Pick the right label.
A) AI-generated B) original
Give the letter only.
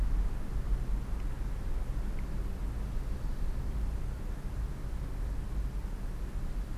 B